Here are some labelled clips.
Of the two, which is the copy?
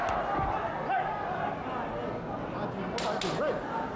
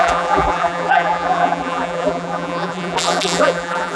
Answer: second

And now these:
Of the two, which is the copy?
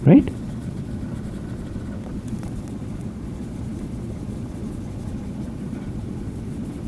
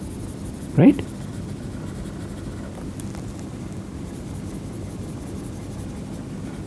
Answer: first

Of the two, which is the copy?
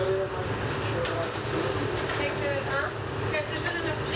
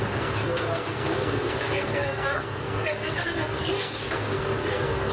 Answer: second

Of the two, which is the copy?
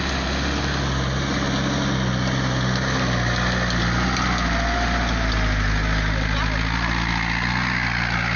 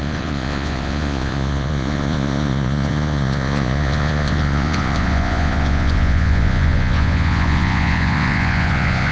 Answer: second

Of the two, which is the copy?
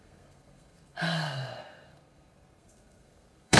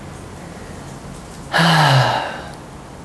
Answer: first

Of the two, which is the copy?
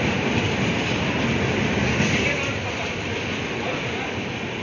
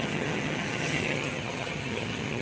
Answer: second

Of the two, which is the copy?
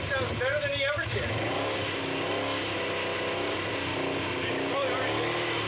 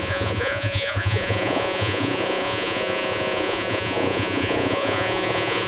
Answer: second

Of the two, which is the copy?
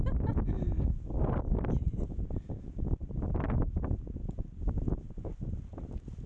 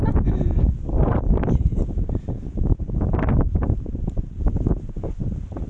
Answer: second